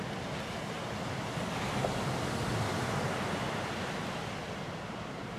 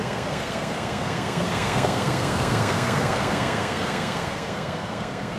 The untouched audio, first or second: first